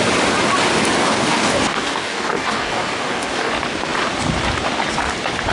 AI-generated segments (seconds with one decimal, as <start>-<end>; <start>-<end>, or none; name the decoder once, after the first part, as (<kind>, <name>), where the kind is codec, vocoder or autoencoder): 1.0-3.5 (codec, DAC)